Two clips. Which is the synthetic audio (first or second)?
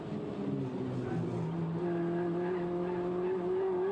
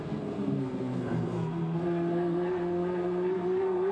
second